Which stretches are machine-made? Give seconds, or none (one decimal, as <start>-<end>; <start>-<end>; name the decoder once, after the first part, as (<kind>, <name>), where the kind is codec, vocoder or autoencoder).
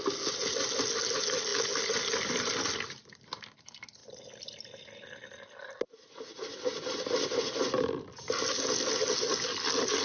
none